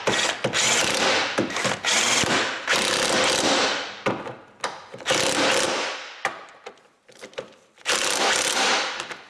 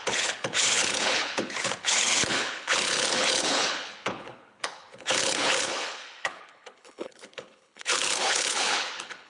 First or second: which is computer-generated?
second